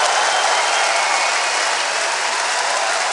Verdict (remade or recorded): recorded